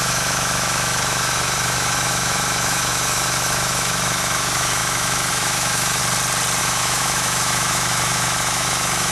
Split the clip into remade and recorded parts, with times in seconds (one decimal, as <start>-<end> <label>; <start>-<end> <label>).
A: 0.0-6.0 remade; 6.0-6.6 recorded; 6.6-9.1 remade